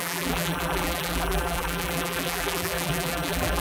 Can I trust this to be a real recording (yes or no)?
no